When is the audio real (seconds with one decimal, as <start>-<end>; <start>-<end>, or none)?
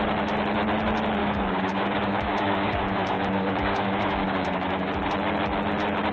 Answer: 0.0-1.2; 4.9-6.1